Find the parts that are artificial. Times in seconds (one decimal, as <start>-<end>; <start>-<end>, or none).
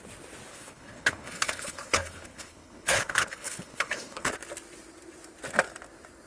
0.5-4.3